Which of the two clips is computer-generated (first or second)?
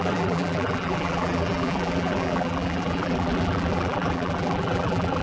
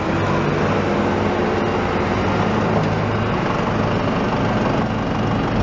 first